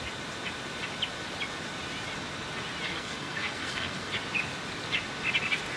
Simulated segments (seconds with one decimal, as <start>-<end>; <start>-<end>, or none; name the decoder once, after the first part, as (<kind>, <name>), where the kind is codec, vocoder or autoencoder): 2.9-4.1 (codec, SNAC)